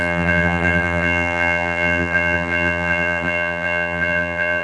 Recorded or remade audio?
remade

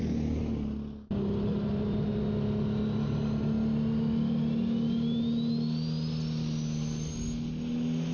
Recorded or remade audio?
recorded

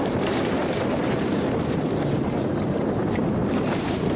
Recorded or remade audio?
remade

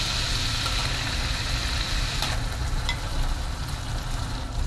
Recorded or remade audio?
recorded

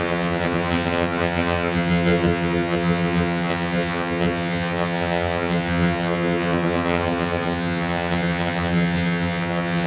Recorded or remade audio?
remade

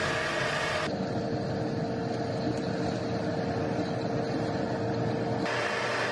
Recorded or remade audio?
recorded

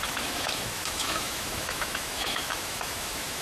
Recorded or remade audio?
remade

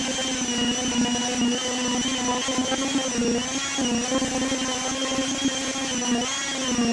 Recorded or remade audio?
recorded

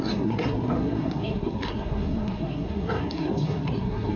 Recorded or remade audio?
remade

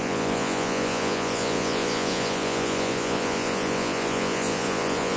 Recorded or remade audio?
remade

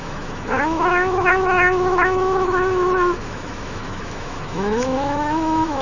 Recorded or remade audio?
remade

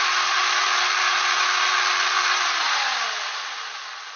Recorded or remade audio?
recorded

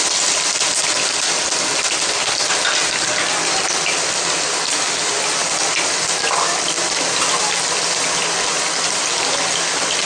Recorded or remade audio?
recorded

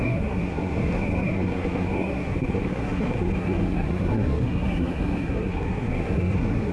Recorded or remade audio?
remade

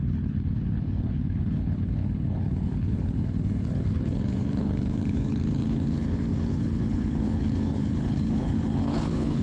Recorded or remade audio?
remade